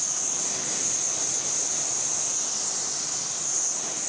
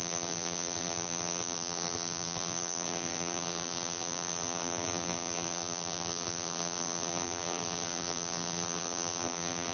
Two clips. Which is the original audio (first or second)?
first